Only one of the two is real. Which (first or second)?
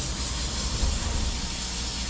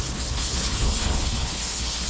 first